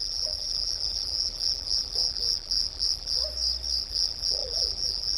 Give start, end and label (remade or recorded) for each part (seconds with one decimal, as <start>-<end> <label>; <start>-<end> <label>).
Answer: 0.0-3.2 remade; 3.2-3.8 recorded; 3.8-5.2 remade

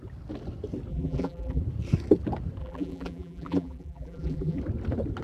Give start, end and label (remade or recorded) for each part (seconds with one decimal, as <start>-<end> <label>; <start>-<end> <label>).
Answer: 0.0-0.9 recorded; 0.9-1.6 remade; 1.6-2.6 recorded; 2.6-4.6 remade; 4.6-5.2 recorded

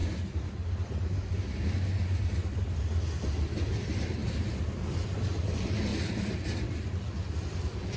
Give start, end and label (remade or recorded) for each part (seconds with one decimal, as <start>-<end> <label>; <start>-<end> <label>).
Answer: 0.0-2.5 recorded; 2.5-4.2 remade; 4.2-5.1 recorded; 5.1-8.0 remade

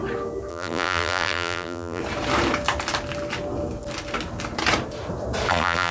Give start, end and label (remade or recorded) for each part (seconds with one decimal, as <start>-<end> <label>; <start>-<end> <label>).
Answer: 0.0-0.5 recorded; 0.5-2.0 remade; 2.0-5.5 recorded; 5.5-5.9 remade

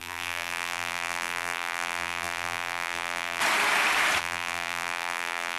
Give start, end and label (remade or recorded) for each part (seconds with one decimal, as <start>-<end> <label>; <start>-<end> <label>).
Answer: 0.0-3.4 remade; 3.4-4.2 recorded; 4.2-5.6 remade

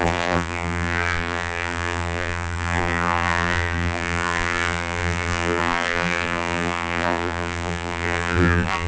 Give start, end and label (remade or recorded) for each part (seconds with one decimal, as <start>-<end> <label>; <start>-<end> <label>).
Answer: 0.0-8.9 remade